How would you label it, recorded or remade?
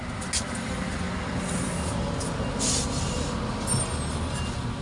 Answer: recorded